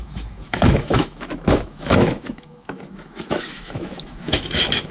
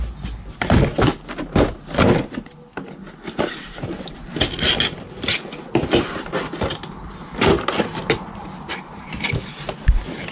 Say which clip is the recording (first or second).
second